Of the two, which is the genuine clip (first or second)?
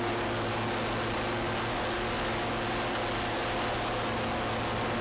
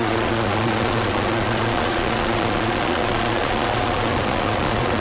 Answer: first